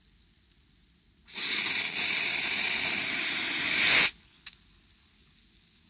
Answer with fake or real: real